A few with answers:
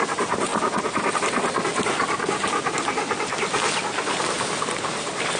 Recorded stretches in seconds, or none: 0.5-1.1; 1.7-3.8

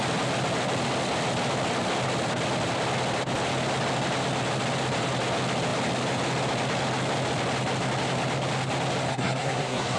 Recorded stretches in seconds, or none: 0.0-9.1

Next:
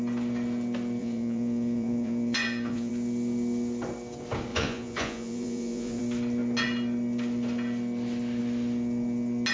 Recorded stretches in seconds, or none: 0.0-1.0; 2.9-4.5; 6.0-9.5

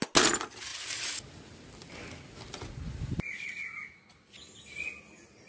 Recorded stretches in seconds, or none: 0.0-5.5

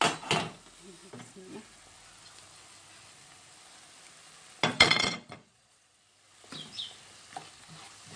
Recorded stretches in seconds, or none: 0.0-4.7; 6.0-8.2

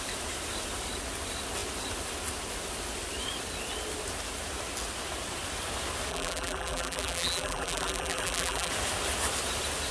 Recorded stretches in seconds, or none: 0.0-6.1; 8.7-9.9